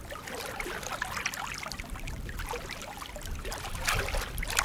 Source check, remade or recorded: recorded